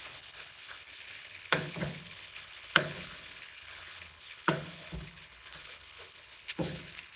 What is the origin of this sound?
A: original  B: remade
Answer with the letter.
B